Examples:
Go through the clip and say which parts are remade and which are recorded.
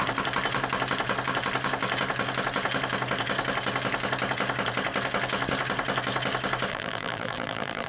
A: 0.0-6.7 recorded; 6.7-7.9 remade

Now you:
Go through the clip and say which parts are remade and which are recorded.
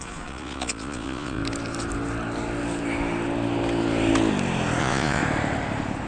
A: 0.0-1.4 remade; 1.4-4.8 recorded; 4.8-5.2 remade; 5.2-6.1 recorded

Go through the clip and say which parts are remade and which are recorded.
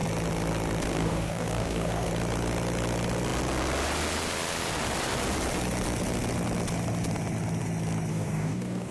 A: 0.0-0.9 recorded; 0.9-2.1 remade; 2.1-8.1 recorded; 8.1-8.9 remade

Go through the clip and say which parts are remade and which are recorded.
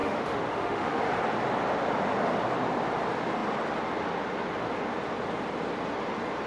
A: 0.0-1.0 remade; 1.0-6.5 recorded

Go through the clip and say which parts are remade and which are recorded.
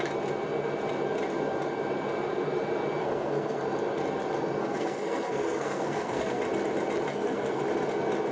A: 0.0-3.0 recorded; 3.0-3.6 remade; 3.6-4.6 recorded; 4.6-6.4 remade; 6.4-7.1 recorded; 7.1-7.6 remade; 7.6-8.3 recorded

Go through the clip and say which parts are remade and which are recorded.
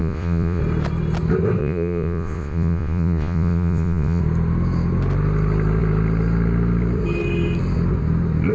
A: 0.0-0.6 remade; 0.6-1.6 recorded; 1.6-4.2 remade; 4.2-8.5 recorded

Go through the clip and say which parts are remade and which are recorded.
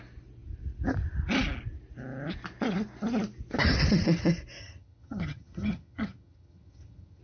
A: 0.0-4.6 recorded; 4.6-7.2 remade